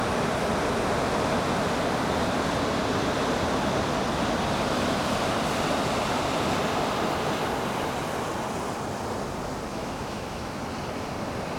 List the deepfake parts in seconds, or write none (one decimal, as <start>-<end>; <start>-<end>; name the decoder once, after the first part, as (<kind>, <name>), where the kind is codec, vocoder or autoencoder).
9.7-10.6 (autoencoder, DAC-VAE)